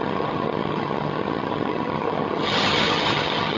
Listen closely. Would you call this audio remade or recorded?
remade